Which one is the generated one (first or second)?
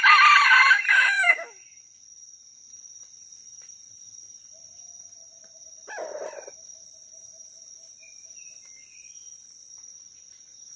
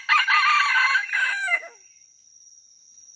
first